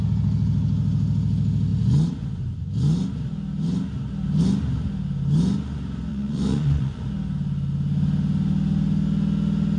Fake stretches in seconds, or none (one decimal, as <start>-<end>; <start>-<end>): 6.1-7.0